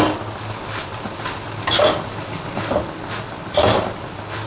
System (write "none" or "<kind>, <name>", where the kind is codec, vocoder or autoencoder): none